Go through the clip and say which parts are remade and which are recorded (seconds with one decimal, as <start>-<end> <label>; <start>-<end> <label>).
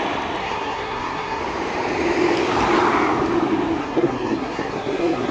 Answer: 0.0-0.4 recorded; 0.4-1.4 remade; 1.4-3.8 recorded; 3.8-5.3 remade